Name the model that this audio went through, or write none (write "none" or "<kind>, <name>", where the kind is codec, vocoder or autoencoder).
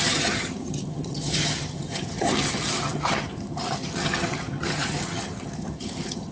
vocoder, HiFi-GAN